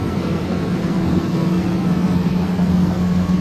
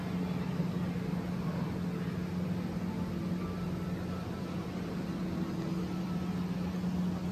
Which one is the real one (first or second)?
second